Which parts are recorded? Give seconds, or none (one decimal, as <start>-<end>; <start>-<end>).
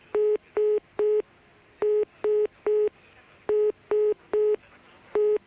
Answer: 0.0-5.5